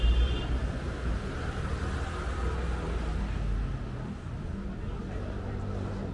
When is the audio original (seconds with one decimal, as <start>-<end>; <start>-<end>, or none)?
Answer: 1.8-5.0